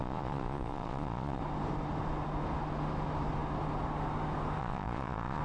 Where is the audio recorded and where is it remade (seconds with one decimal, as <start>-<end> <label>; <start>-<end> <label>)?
0.0-1.4 remade; 1.4-4.6 recorded; 4.6-5.4 remade